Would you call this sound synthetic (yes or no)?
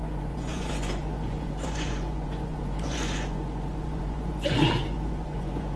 yes